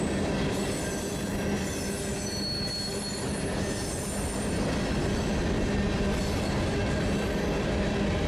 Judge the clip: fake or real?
real